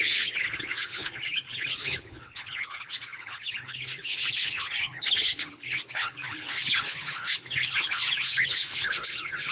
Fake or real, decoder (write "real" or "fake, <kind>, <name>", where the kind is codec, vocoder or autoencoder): fake, codec, HILCodec